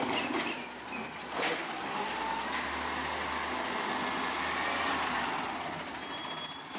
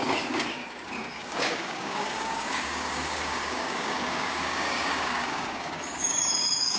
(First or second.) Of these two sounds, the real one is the first